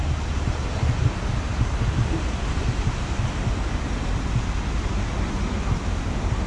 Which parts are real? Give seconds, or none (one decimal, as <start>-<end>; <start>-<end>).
0.0-6.5